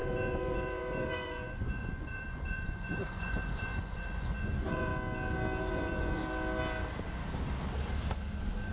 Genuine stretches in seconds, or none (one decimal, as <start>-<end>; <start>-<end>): 4.9-5.6; 6.2-8.7